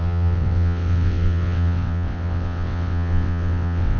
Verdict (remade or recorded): remade